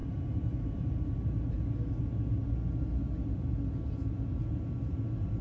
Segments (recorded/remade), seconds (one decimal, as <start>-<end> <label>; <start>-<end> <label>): 0.0-1.5 remade; 1.5-5.4 recorded

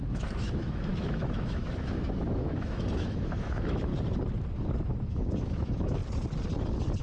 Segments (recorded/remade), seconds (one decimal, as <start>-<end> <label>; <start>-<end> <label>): 0.0-3.9 remade; 3.9-5.1 recorded; 5.1-6.0 remade; 6.0-7.0 recorded

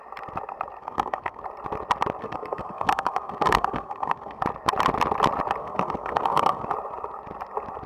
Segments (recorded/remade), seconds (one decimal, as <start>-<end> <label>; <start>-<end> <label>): 0.0-0.8 recorded; 0.8-1.4 remade; 1.4-2.2 recorded; 2.2-4.4 remade; 4.4-5.6 recorded; 5.6-6.7 remade; 6.7-7.9 recorded

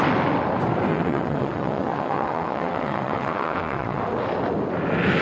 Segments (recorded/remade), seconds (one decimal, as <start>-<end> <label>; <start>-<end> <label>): 0.0-0.9 recorded; 0.9-4.0 remade; 4.0-5.2 recorded